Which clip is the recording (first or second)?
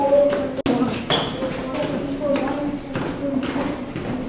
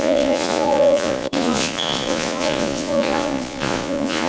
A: first